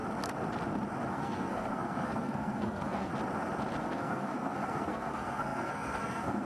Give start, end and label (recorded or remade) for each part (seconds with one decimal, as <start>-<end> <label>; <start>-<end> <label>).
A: 0.0-1.1 recorded; 1.1-3.1 remade; 3.1-3.8 recorded; 3.8-6.5 remade